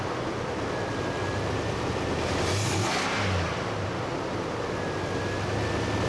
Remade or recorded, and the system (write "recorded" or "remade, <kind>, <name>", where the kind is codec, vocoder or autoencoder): recorded